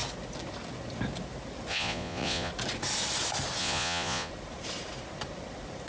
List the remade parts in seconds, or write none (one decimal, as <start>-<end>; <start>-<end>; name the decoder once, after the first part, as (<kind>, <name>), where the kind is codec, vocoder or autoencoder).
1.7-2.5 (vocoder, Vocos); 3.6-4.3